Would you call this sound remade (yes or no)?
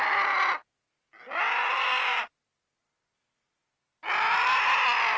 no